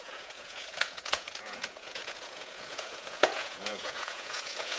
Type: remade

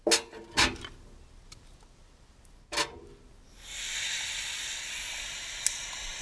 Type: recorded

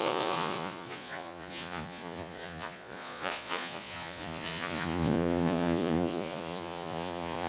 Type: remade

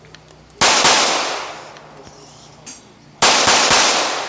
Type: recorded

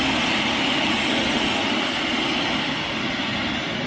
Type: recorded